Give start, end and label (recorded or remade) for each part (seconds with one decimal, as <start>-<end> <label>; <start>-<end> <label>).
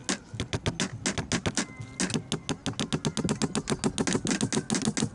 0.0-5.1 recorded